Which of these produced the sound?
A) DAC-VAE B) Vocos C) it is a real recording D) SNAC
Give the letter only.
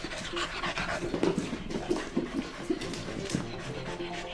C